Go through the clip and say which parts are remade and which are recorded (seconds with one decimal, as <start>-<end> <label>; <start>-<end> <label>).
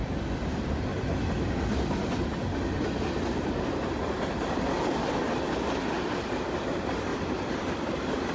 0.0-0.5 recorded; 0.5-0.9 remade; 0.9-5.1 recorded; 5.1-7.1 remade; 7.1-7.6 recorded; 7.6-8.3 remade